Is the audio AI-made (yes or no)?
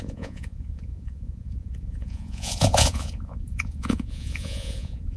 yes